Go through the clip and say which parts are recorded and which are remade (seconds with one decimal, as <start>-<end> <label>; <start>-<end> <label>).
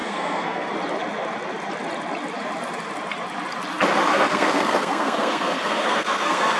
0.0-0.7 remade; 0.7-4.1 recorded; 4.1-6.6 remade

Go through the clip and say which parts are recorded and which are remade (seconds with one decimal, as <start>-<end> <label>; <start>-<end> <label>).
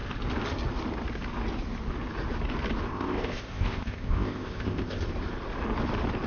0.0-2.9 recorded; 2.9-5.0 remade; 5.0-6.3 recorded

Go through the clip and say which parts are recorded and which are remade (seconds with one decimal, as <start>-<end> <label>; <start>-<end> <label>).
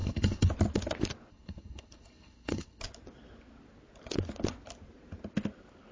0.0-0.5 remade; 0.5-1.3 recorded; 1.3-2.8 remade; 2.8-5.9 recorded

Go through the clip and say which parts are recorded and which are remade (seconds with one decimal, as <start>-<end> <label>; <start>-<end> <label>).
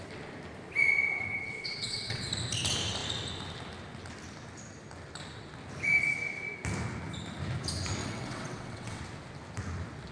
0.0-1.3 recorded; 1.3-2.3 remade; 2.3-8.0 recorded; 8.0-9.0 remade; 9.0-10.1 recorded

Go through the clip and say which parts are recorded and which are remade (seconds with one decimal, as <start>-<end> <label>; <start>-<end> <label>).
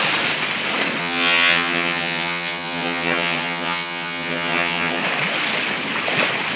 0.0-1.0 recorded; 1.0-5.0 remade; 5.0-6.6 recorded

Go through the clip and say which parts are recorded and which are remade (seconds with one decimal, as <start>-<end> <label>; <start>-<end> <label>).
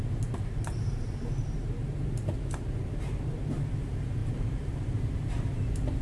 0.0-1.6 remade; 1.6-4.2 recorded; 4.2-5.6 remade; 5.6-6.0 recorded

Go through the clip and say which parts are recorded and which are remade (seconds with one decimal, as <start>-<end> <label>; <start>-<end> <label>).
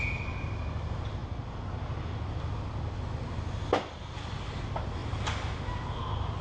0.0-6.4 recorded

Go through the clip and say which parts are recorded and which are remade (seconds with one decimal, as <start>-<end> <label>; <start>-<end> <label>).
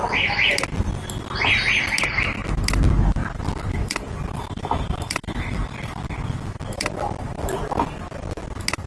0.0-3.2 recorded; 3.2-7.7 remade; 7.7-8.9 recorded